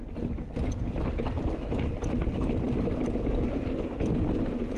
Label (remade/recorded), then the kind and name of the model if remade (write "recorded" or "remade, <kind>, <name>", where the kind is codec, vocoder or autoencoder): recorded